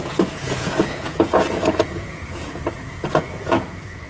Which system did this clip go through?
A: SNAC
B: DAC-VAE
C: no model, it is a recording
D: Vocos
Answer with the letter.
D